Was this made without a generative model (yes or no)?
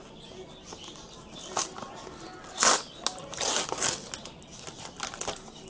yes